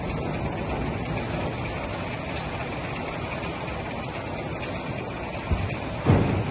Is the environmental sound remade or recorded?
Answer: recorded